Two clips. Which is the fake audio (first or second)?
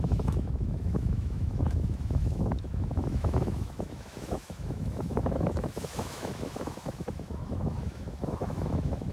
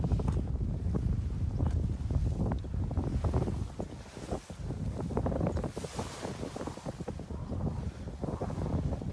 first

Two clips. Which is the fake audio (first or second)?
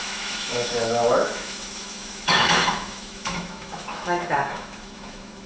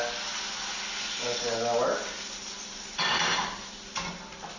first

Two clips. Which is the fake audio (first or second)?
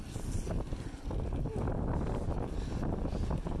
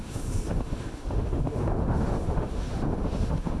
second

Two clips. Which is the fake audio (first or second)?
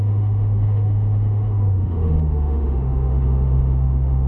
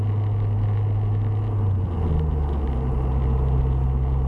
first